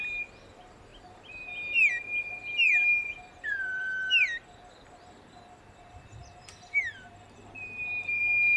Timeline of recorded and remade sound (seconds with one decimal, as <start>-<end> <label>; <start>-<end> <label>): 0.0-6.2 recorded; 6.2-8.2 remade; 8.2-8.6 recorded